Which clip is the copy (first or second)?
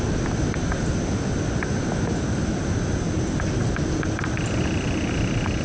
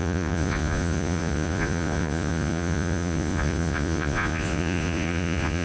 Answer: second